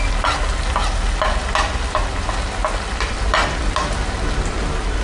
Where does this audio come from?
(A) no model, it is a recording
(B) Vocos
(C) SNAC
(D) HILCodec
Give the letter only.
A